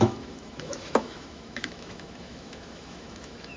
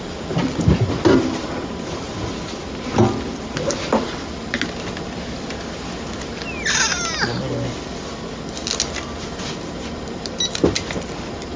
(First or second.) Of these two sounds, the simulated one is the first